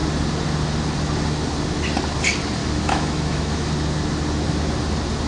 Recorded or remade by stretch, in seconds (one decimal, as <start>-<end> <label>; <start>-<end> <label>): 0.0-2.6 recorded; 2.6-3.7 remade; 3.7-5.3 recorded